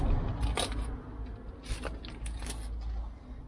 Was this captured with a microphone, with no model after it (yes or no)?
yes